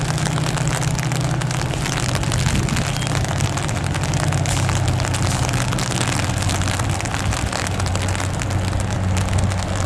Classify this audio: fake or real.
real